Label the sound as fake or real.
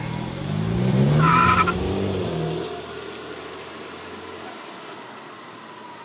real